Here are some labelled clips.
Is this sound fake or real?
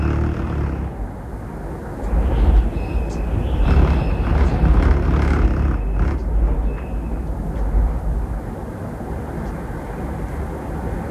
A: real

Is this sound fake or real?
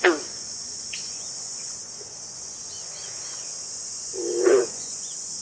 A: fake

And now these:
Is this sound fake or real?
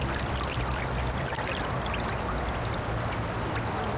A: real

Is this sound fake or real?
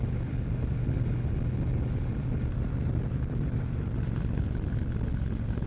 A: real